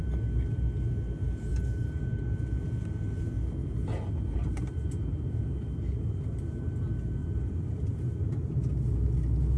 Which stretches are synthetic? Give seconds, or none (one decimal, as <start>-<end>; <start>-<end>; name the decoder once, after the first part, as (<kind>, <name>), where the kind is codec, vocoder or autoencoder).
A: 1.5-2.0 (vocoder, BigVGAN v2); 3.6-6.6; 7.2-8.9